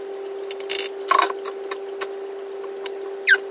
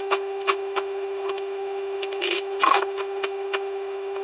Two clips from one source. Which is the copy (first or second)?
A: second